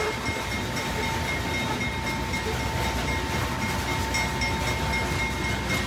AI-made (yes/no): no